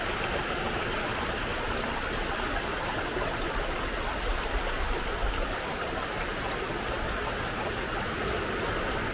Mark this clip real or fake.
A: real